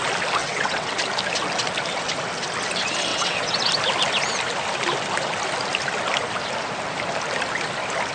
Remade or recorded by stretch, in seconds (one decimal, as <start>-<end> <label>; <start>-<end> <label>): 0.0-0.4 recorded; 0.4-0.9 remade; 0.9-3.1 recorded; 3.1-3.7 remade; 3.7-8.1 recorded